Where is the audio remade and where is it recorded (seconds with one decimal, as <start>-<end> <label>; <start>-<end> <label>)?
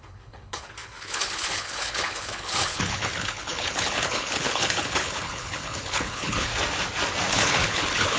0.0-6.5 remade; 6.5-7.3 recorded; 7.3-8.2 remade